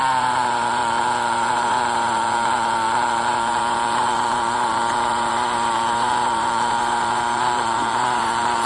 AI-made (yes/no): yes